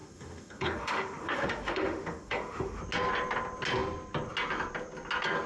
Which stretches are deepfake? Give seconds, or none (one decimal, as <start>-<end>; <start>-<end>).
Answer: 0.0-2.8